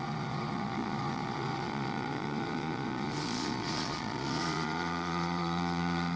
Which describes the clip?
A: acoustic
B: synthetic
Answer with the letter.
B